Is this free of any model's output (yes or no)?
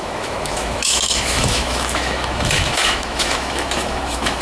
no